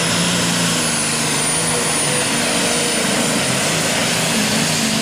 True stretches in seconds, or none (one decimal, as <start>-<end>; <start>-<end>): 0.0-4.0; 4.5-5.0